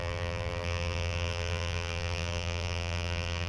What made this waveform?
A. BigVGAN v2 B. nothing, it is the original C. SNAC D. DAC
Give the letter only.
A